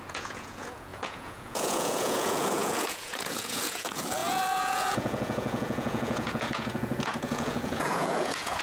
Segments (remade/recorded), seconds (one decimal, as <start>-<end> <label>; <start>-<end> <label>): 0.0-8.6 remade